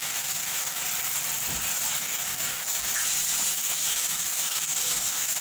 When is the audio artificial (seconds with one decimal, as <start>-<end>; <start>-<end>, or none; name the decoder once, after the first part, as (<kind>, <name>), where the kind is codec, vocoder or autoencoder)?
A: 0.0-0.8 (codec, DAC); 2.0-2.9; 3.6-5.4